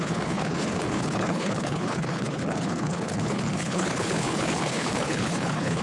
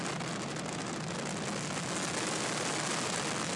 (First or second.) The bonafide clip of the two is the second